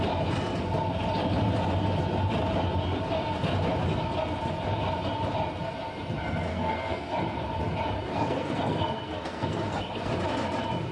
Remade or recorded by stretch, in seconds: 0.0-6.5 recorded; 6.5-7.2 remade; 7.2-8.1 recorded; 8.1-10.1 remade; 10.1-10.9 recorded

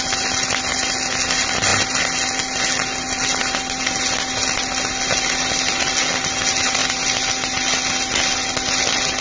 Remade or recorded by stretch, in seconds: 0.0-9.2 recorded

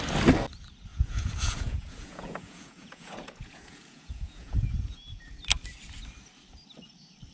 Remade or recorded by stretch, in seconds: 0.0-0.9 recorded; 0.9-5.3 remade; 5.3-7.3 recorded

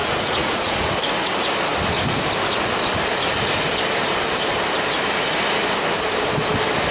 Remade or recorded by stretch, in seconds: 0.0-0.9 remade; 0.9-6.9 recorded

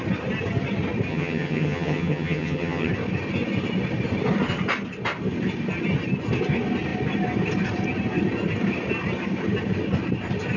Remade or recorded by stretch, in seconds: 0.0-1.1 recorded; 1.1-2.9 remade; 2.9-10.6 recorded